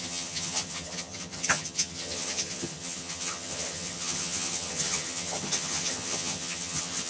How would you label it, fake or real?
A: fake